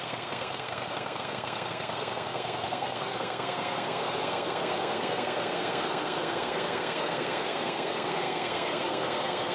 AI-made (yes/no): yes